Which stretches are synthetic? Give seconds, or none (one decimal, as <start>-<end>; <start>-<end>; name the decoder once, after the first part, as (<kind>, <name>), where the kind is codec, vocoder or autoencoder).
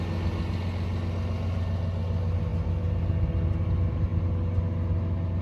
none